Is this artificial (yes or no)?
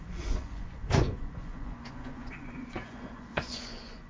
yes